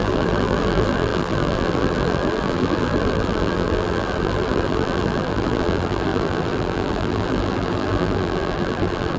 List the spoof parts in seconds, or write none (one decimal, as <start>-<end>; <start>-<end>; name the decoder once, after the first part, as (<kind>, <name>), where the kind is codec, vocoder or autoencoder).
0.0-9.2 (vocoder, BigVGAN v2)